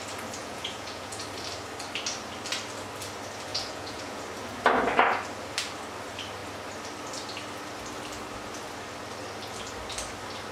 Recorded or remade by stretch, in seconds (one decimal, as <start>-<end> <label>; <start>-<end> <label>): 0.0-0.4 recorded; 0.4-1.2 remade; 1.2-3.5 recorded; 3.5-4.2 remade; 4.2-10.5 recorded